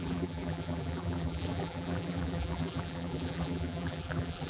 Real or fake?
fake